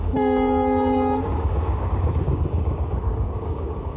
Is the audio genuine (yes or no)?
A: no